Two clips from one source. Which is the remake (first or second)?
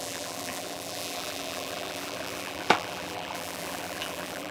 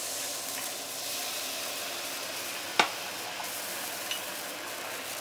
first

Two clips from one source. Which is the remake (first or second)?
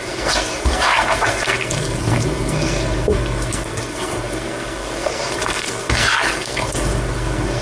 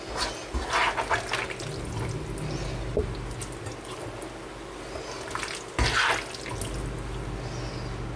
first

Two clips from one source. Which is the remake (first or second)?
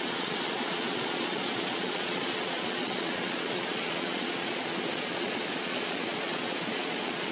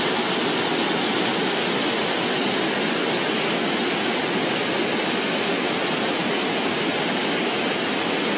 first